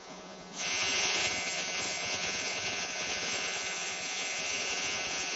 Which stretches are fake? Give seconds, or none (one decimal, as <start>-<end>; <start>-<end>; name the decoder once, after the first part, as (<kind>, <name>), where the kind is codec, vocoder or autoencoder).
0.0-5.4 (vocoder, Vocos)